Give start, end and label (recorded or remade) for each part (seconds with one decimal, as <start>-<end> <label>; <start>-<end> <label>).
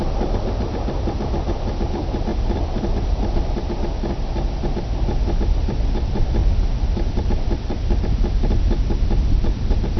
0.0-10.0 recorded